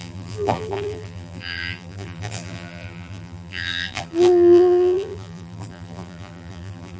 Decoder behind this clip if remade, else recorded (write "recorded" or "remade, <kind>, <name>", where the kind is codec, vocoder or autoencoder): remade, vocoder, BigVGAN v2